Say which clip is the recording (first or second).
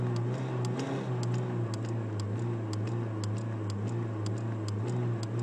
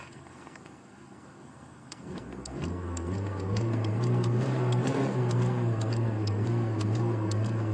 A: first